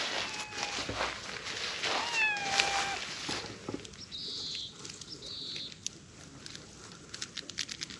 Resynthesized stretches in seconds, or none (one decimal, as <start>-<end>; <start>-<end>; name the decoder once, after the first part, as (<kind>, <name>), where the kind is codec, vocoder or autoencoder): none